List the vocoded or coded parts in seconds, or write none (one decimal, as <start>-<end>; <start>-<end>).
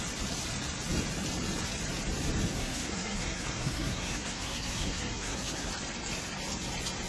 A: 2.5-5.7